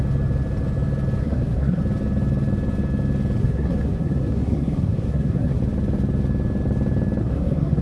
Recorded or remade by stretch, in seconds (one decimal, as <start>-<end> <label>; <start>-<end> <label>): 0.0-1.2 recorded; 1.2-1.8 remade; 1.8-3.4 recorded; 3.4-5.6 remade; 5.6-7.2 recorded; 7.2-7.8 remade